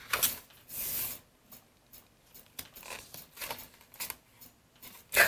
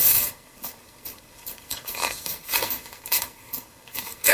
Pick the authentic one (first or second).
first